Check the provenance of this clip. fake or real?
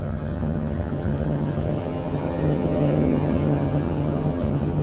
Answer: fake